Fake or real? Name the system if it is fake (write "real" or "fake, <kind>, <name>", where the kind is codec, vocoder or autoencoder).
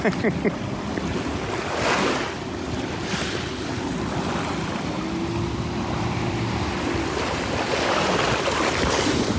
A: real